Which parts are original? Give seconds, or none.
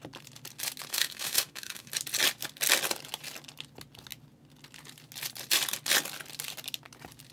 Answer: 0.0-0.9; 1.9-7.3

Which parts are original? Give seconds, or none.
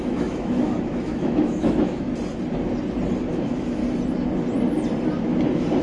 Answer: 2.1-3.3; 3.8-5.8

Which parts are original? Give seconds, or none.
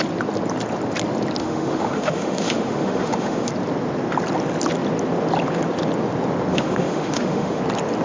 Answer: 0.0-1.4; 3.5-6.5; 7.6-8.0